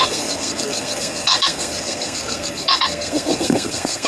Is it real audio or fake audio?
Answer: fake